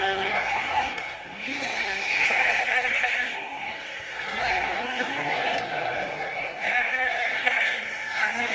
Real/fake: fake